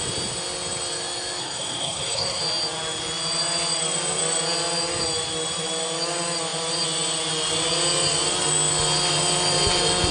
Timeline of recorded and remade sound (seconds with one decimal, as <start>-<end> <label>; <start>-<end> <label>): 0.0-1.4 recorded; 1.4-2.4 remade; 2.4-10.1 recorded